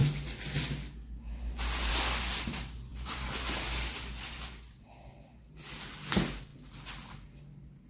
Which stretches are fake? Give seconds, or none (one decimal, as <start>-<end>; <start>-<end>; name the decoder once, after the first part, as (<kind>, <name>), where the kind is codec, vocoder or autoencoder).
none